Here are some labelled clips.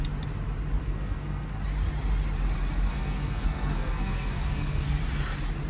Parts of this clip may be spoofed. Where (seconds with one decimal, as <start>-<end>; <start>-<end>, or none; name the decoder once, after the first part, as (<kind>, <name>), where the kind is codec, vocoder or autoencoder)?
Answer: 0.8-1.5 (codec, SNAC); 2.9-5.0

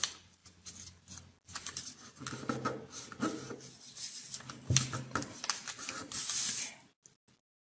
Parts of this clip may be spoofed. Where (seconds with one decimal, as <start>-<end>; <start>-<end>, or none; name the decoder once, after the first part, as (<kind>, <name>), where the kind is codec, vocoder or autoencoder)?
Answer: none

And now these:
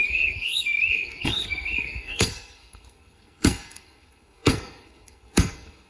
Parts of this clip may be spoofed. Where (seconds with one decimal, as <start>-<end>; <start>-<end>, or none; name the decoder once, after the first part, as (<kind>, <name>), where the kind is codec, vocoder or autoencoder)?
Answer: 0.0-5.9 (codec, SNAC)

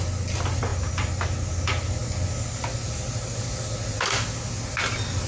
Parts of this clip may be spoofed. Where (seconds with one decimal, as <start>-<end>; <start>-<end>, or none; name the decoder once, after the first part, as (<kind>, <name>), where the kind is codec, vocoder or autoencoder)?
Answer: none